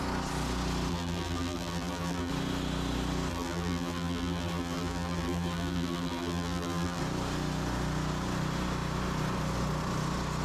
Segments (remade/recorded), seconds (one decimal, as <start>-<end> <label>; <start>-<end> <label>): 0.0-0.9 recorded; 0.9-2.3 remade; 2.3-3.3 recorded; 3.3-7.0 remade; 7.0-10.4 recorded